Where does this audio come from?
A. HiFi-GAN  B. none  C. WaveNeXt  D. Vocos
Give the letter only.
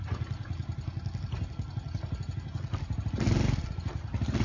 B